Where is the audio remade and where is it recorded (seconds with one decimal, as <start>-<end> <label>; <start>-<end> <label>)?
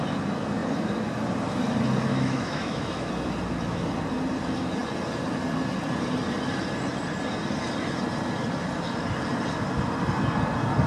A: 0.0-2.1 recorded; 2.1-3.1 remade; 3.1-10.9 recorded